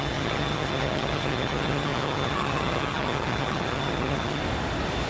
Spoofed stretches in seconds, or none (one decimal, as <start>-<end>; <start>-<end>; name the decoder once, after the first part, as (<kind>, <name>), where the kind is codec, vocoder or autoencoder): 0.0-4.4 (vocoder, HiFi-GAN)